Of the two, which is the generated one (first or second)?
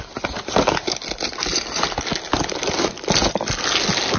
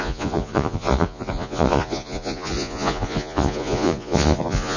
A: second